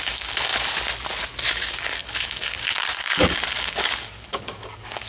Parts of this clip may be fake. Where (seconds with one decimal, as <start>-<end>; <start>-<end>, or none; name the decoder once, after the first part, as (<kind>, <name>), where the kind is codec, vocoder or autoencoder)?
0.0-0.5 (codec, DAC); 1.5-5.1